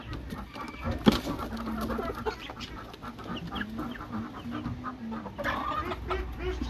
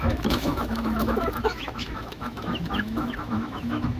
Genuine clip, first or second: first